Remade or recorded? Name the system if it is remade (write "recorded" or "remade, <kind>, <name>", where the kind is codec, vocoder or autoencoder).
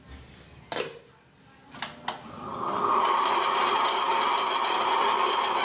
recorded